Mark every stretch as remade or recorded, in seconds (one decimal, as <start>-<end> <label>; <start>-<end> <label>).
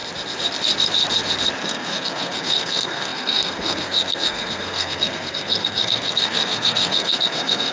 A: 0.0-1.6 recorded; 1.6-7.7 remade